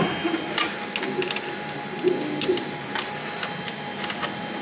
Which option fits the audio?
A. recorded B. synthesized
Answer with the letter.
A